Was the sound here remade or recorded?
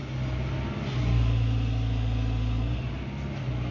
recorded